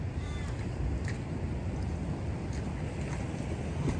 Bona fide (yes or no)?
yes